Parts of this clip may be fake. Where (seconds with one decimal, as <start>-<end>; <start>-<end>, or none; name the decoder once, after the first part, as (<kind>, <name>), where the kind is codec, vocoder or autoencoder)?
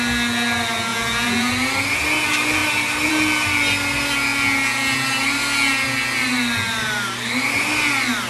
0.9-1.5 (vocoder, Vocos)